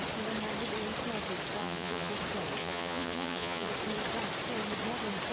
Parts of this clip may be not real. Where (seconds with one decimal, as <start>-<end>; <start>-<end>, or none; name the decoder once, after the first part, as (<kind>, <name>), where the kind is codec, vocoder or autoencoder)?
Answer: 1.6-2.1 (vocoder, Vocos); 2.6-3.7